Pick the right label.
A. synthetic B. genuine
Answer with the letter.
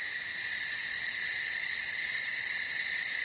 B